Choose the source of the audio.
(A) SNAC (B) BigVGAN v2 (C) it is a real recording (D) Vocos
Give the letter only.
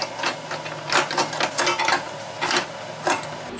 C